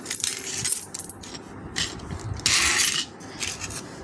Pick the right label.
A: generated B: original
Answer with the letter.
B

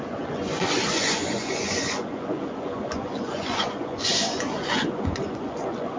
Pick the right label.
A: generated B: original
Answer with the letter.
A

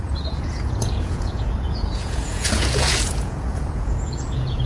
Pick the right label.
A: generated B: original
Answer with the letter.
A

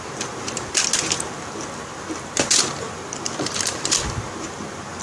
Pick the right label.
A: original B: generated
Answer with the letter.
A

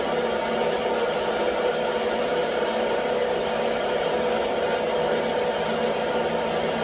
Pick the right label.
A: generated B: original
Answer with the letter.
B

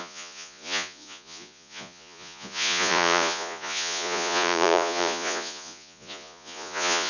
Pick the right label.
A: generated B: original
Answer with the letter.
A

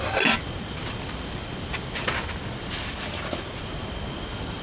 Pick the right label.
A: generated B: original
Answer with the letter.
B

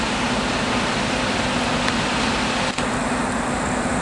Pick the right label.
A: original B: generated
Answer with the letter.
A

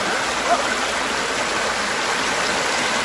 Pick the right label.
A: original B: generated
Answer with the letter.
A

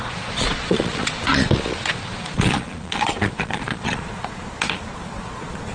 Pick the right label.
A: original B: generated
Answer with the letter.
B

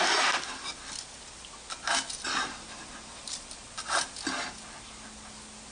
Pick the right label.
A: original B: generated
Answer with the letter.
A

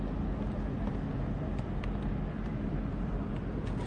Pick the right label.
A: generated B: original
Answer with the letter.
B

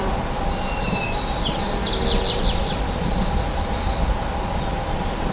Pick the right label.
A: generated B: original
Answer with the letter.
B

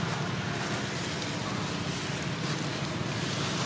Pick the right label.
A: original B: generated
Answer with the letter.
A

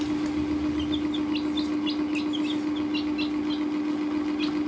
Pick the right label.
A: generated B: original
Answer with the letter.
B